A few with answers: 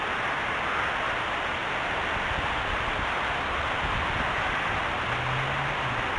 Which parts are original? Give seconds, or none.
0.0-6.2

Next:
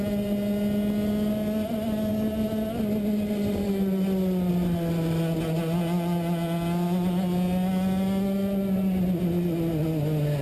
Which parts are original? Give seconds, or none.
0.0-10.4

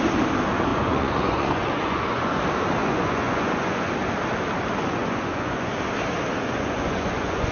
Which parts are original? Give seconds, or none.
0.0-0.7; 2.4-2.8; 3.9-5.0; 5.7-6.4

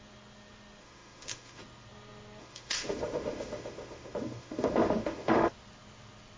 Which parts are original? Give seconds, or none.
0.0-0.8; 1.6-2.4; 5.5-6.4

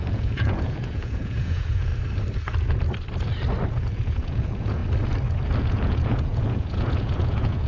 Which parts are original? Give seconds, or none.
1.9-3.7; 4.8-5.6

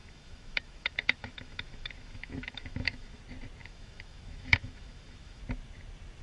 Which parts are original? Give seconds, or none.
3.2-3.6; 5.4-6.2